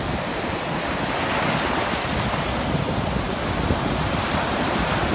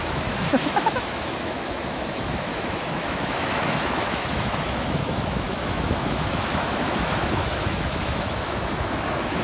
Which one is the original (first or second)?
first